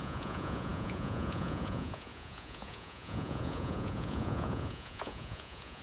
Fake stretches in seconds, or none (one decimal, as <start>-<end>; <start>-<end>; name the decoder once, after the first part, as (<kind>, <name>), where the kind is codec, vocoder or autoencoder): 0.0-5.8 (vocoder, Vocos)